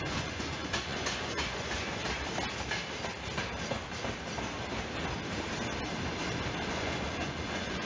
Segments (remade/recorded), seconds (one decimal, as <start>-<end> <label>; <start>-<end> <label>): 0.0-2.0 remade; 2.0-6.7 recorded; 6.7-7.8 remade